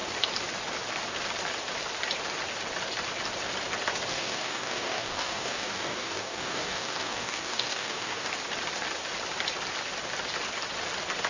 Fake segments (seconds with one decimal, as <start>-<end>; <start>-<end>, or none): 4.1-8.3